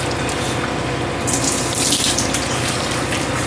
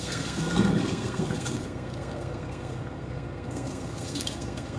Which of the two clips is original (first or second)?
first